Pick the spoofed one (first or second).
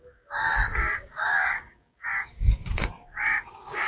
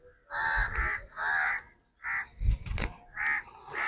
first